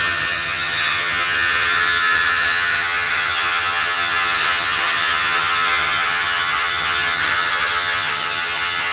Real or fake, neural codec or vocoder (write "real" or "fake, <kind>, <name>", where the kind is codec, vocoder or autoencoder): fake, vocoder, HiFi-GAN